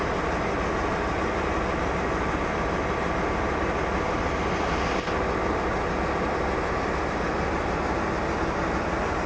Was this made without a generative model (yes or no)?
yes